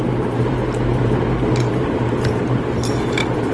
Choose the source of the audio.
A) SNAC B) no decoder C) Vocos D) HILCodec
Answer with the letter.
B